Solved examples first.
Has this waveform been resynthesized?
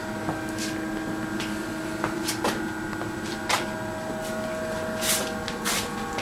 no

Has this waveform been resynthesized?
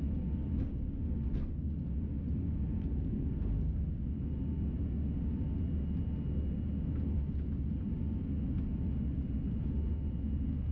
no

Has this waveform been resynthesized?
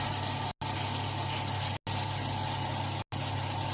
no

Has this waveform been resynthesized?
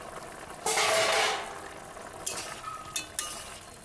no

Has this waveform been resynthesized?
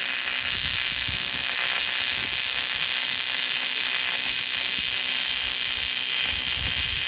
yes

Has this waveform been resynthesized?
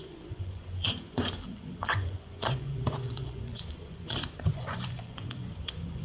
yes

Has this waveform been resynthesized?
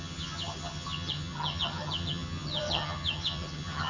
yes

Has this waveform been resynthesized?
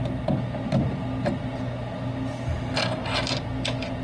no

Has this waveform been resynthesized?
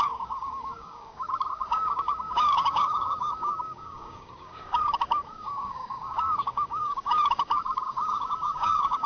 yes